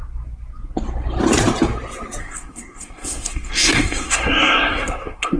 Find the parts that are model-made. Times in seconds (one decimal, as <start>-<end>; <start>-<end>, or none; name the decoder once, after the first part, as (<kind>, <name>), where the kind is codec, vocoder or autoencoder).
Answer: 2.2-5.4 (codec, SNAC)